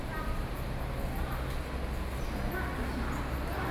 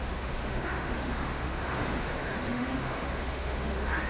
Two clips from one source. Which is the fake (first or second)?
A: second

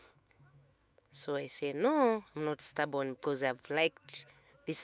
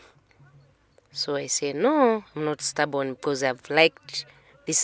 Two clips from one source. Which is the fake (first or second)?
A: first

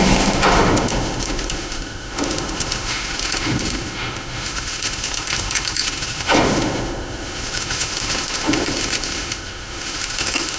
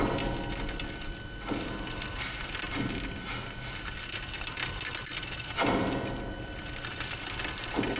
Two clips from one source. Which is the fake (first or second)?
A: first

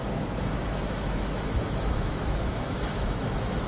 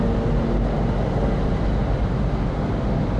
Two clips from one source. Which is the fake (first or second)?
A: first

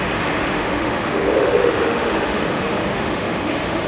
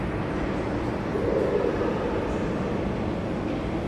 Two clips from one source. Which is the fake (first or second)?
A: first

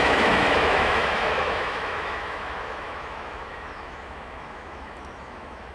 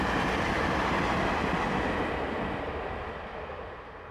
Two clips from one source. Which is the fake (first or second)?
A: first